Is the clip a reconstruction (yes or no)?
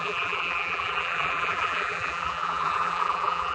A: yes